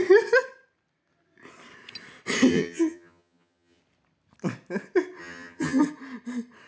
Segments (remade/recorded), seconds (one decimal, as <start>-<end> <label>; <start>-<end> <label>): 0.0-2.5 recorded; 2.5-3.8 remade; 3.8-5.2 recorded; 5.2-5.8 remade; 5.8-6.7 recorded